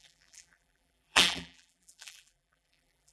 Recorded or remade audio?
remade